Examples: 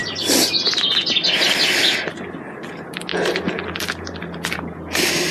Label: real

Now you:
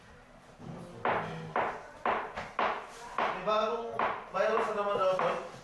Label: real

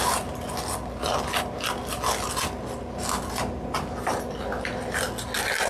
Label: real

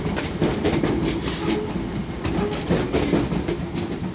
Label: real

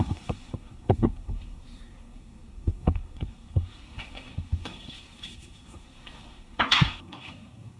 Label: fake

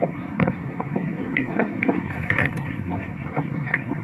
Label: fake